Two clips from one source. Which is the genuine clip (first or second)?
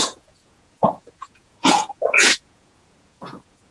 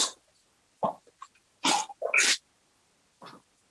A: second